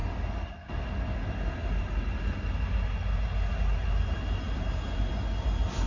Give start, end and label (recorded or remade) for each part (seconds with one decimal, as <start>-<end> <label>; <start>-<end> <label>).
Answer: 0.0-5.9 recorded